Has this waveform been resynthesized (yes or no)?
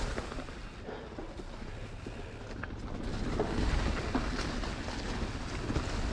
no